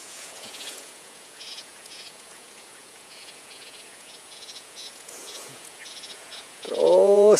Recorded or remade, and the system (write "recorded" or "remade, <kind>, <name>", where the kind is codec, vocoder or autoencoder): remade, vocoder, Vocos